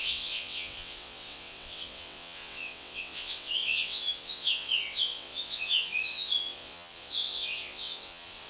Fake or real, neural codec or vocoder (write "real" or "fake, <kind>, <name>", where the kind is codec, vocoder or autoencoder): fake, vocoder, WaveNeXt